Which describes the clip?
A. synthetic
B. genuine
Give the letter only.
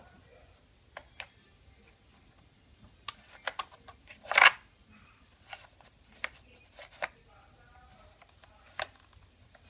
B